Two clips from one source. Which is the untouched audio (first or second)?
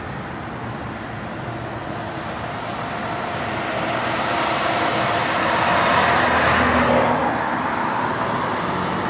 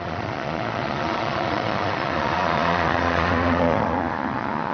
first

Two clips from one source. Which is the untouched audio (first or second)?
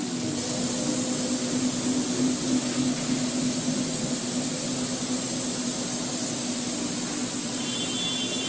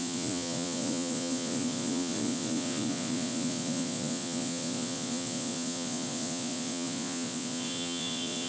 first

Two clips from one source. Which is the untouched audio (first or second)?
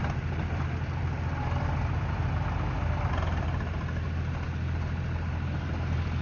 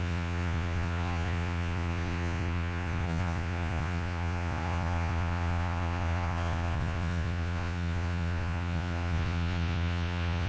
first